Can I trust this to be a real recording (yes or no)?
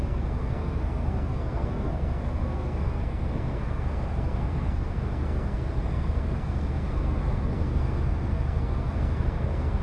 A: no